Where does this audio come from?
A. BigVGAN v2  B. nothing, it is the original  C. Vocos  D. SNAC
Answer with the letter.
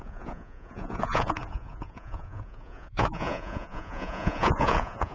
C